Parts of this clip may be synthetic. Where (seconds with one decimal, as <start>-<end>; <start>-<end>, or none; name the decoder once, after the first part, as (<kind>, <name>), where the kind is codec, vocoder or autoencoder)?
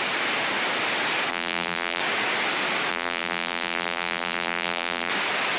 1.3-2.0 (vocoder, BigVGAN v2); 2.9-5.1